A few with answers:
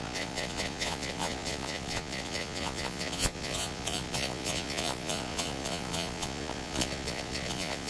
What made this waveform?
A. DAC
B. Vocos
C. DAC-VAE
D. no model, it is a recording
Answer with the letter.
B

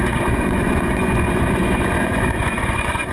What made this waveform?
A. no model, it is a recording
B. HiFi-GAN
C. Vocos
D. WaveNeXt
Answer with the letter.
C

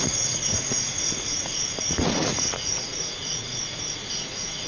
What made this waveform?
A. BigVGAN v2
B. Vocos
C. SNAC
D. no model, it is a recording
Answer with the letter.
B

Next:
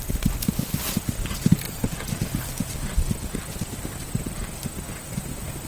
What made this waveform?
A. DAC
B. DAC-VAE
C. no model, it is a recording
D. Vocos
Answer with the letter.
C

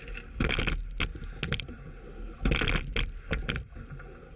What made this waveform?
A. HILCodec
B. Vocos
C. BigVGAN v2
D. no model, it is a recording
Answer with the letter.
D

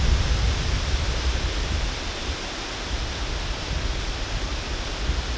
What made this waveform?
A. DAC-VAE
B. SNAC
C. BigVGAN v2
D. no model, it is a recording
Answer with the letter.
D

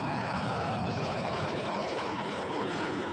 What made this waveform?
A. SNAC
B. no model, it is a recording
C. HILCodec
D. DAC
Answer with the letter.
C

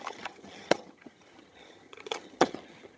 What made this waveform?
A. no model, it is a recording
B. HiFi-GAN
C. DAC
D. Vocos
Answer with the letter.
B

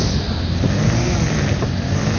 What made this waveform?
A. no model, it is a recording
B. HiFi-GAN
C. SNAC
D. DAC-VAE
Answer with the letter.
A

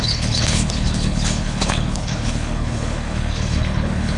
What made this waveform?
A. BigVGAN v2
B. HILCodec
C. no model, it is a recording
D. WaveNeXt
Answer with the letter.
B